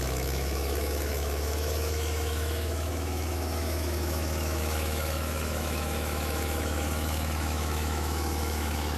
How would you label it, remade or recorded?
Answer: remade